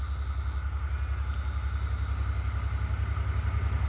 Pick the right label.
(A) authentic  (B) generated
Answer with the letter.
A